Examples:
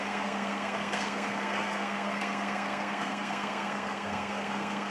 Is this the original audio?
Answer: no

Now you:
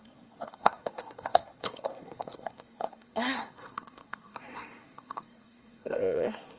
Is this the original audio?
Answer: no